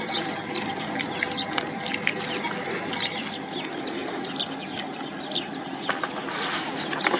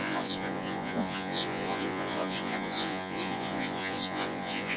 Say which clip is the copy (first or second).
second